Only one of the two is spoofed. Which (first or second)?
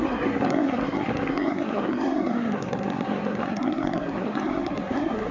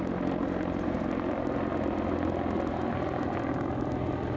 first